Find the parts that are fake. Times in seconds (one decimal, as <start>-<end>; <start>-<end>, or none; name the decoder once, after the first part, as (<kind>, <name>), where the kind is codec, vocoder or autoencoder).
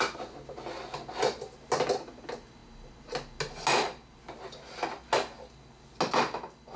none